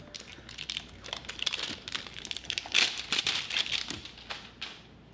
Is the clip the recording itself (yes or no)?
yes